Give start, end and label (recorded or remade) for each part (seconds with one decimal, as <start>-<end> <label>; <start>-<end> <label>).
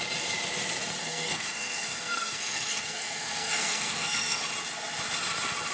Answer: 0.0-1.0 recorded; 1.0-4.4 remade; 4.4-5.7 recorded